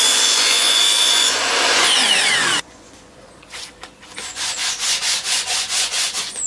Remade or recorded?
remade